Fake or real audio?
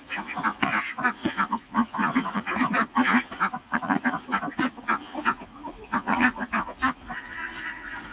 fake